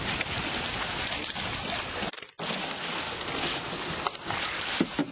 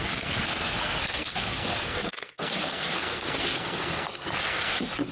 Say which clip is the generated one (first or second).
second